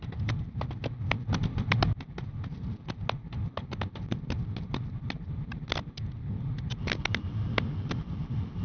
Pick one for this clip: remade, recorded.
recorded